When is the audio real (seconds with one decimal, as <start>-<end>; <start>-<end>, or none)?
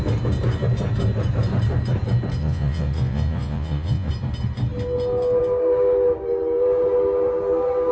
0.0-2.4; 4.1-7.9